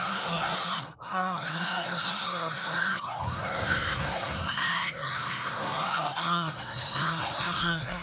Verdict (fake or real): fake